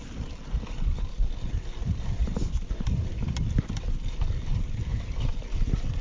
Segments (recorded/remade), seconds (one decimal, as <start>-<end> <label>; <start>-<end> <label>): 0.0-6.0 recorded